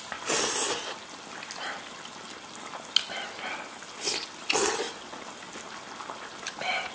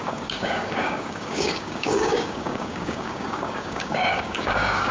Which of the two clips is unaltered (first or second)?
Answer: first